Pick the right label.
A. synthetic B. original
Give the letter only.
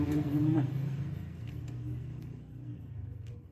A